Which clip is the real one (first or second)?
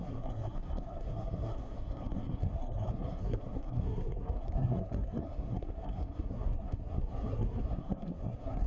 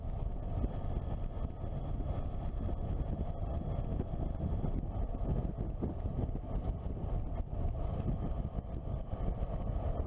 second